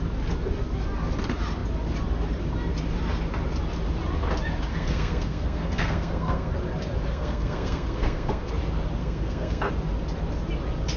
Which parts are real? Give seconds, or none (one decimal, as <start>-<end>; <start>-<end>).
0.0-4.7; 6.5-7.1; 8.5-9.0; 9.7-11.0